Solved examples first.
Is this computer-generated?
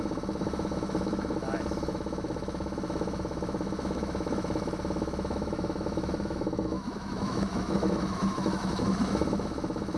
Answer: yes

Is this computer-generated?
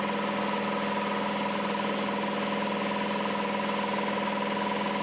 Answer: no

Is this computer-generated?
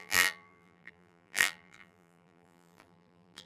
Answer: yes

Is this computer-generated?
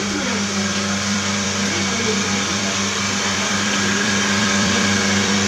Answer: yes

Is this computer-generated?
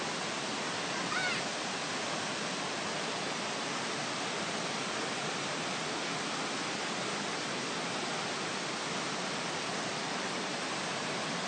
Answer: yes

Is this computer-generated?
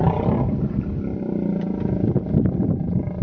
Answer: no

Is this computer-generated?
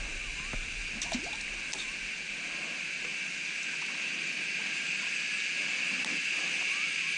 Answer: no